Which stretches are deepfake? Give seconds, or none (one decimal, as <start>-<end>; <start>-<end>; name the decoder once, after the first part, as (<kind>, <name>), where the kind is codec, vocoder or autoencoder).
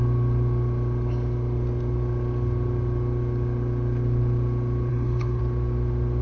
4.9-5.4 (codec, HILCodec)